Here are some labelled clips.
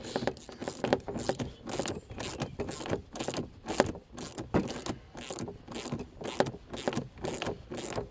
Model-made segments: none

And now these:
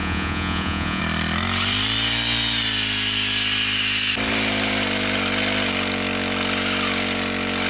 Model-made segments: 0.0-1.0

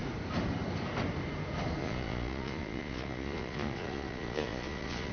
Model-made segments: 1.8-5.1